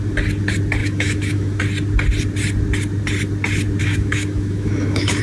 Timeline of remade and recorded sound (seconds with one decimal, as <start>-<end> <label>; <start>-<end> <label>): 0.0-0.8 recorded; 0.8-1.6 remade; 1.6-3.8 recorded; 3.8-5.2 remade